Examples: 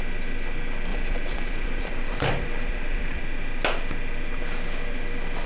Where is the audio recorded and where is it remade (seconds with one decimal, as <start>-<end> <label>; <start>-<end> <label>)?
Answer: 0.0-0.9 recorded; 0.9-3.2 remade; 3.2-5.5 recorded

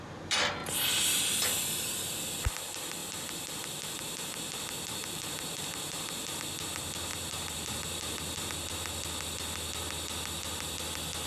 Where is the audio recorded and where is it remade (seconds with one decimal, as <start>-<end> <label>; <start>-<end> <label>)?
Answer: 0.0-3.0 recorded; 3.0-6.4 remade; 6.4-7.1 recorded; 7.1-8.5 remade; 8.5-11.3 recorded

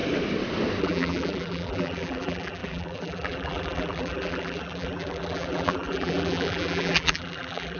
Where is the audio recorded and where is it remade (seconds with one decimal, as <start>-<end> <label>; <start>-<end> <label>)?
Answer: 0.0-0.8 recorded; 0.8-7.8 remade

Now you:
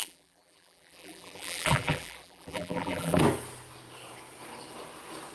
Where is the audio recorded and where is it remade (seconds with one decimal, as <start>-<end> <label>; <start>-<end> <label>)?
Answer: 0.0-3.2 remade; 3.2-5.3 recorded